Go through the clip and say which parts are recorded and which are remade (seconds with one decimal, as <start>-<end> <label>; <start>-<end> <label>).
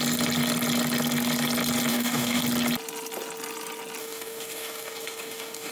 0.0-1.9 recorded; 1.9-2.4 remade; 2.4-4.0 recorded; 4.0-5.7 remade